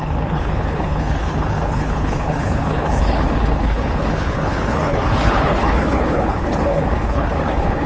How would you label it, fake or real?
fake